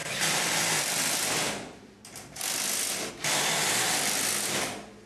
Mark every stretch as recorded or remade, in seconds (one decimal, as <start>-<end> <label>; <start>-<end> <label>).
0.0-5.1 recorded